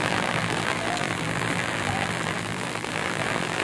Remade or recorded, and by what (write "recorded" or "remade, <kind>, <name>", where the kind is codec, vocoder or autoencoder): remade, vocoder, BigVGAN v2